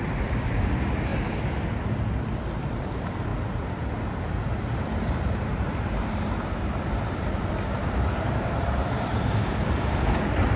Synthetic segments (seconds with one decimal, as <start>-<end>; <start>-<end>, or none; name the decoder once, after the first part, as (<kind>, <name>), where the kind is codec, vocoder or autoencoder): 0.0-1.1 (vocoder, BigVGAN v2); 2.2-3.3; 4.8-10.6